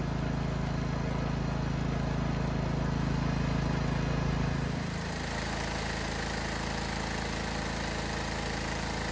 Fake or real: real